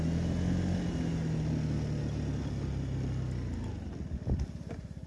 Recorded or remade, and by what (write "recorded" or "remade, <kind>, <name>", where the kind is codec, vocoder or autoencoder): recorded